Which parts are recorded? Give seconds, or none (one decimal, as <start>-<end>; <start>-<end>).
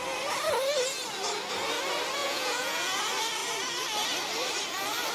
0.0-2.2; 3.0-5.1